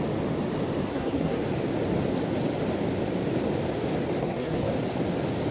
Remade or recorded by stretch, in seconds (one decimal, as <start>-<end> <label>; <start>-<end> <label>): 0.0-0.9 recorded; 0.9-1.4 remade; 1.4-4.2 recorded; 4.2-4.7 remade; 4.7-5.5 recorded